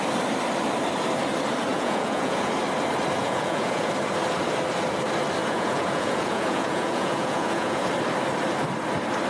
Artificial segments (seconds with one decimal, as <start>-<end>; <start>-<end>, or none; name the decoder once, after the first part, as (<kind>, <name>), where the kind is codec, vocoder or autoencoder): 1.7-2.5 (vocoder, Vocos); 3.2-3.9; 5.4-7.9